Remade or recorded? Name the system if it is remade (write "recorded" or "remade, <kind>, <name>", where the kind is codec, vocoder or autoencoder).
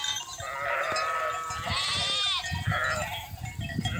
recorded